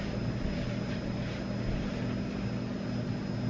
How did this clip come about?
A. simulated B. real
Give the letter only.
B